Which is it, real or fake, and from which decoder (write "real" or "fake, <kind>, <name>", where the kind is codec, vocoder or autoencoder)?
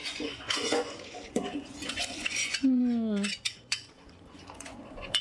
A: fake, vocoder, Vocos